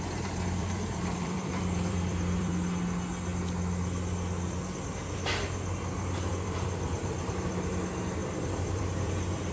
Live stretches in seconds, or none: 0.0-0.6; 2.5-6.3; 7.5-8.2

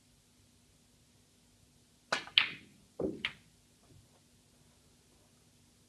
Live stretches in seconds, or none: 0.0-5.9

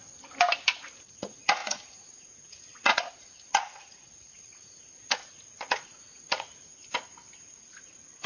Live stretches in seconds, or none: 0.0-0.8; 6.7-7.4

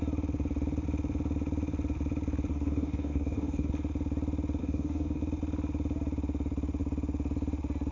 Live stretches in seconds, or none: 0.0-2.5; 3.7-4.6; 5.2-7.9

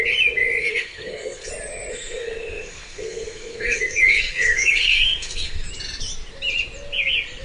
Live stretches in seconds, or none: 0.0-0.6; 1.5-1.9; 5.7-7.4

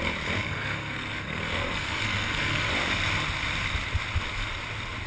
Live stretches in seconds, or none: 0.0-0.4; 2.7-5.1